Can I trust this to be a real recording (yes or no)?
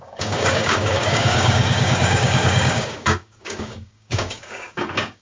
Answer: no